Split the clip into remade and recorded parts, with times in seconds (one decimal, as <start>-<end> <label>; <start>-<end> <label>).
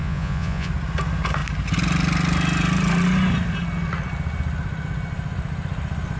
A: 0.0-0.7 remade; 0.7-6.2 recorded